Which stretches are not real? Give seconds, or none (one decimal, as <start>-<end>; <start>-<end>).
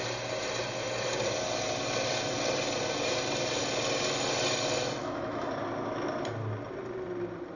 5.0-5.5